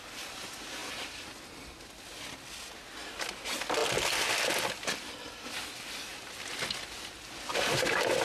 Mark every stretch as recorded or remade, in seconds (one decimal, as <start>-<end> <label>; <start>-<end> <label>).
0.0-8.2 recorded